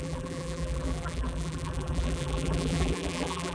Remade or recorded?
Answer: remade